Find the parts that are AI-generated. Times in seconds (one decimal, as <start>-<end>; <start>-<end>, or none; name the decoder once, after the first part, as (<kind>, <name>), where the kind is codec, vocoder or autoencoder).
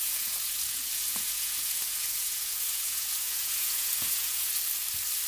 0.0-4.5 (vocoder, Vocos)